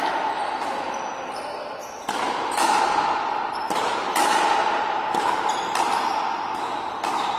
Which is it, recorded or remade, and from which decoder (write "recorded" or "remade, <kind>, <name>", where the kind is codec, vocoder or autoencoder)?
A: recorded